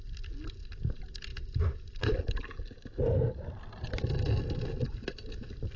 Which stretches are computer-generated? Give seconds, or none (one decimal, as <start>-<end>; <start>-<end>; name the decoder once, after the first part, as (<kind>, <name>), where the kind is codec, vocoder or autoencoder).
none